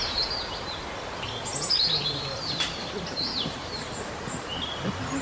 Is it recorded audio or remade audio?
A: recorded